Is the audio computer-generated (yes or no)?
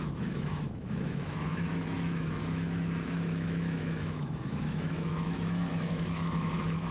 yes